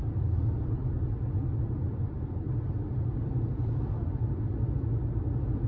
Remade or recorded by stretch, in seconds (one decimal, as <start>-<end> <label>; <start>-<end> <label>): 0.0-5.7 recorded